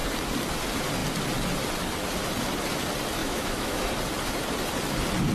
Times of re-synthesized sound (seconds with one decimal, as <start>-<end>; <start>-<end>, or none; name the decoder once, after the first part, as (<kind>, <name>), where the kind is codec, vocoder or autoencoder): 3.2-3.8 (autoencoder, DAC-VAE)